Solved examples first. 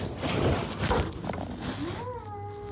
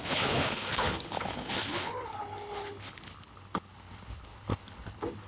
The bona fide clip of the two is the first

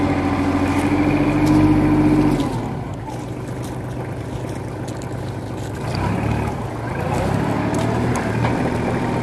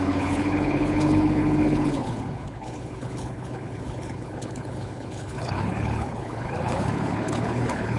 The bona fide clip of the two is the first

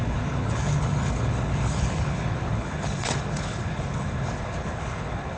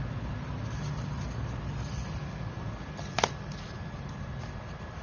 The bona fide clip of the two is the second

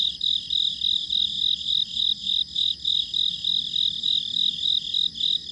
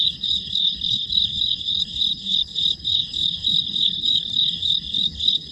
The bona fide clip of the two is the first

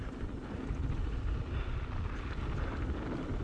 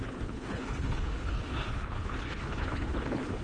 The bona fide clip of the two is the first